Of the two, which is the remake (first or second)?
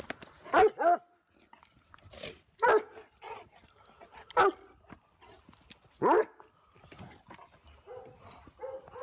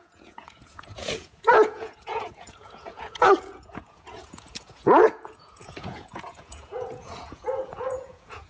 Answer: second